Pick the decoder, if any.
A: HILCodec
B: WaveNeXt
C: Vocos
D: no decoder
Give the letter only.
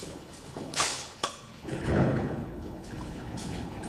A